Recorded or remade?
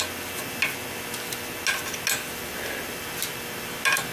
recorded